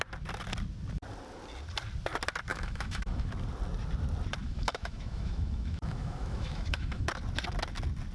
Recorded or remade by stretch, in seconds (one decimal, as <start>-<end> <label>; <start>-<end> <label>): 0.0-2.5 recorded; 2.5-3.3 remade; 3.3-4.4 recorded; 4.4-7.1 remade; 7.1-8.1 recorded